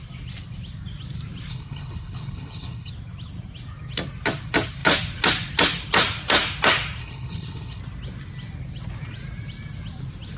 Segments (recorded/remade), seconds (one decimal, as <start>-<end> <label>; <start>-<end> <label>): 0.0-1.5 recorded; 1.5-2.9 remade; 2.9-7.0 recorded; 7.0-7.8 remade; 7.8-10.4 recorded